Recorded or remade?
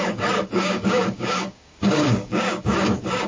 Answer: remade